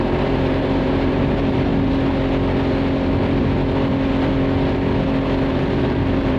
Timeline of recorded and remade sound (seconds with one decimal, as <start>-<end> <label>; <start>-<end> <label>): 0.0-1.7 remade; 1.7-5.5 recorded; 5.5-6.4 remade